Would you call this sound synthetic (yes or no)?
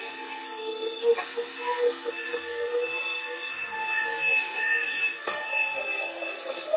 yes